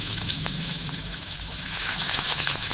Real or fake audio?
fake